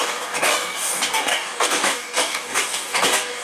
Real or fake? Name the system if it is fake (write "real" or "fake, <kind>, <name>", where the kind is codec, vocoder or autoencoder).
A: fake, codec, DAC